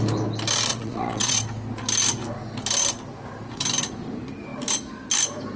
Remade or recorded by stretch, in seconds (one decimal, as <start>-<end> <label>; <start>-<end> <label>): 0.0-0.7 recorded; 0.7-1.4 remade; 1.4-5.6 recorded